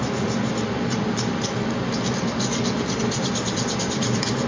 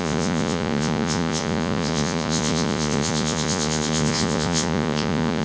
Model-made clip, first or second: second